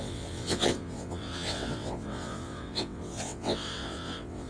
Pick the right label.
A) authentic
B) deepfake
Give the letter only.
B